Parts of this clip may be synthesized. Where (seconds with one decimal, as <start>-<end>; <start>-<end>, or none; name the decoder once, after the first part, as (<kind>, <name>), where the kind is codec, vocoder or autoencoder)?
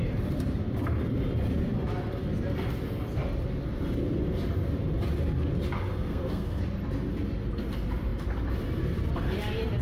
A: 5.9-6.6 (codec, SNAC)